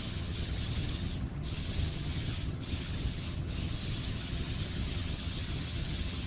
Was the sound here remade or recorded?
remade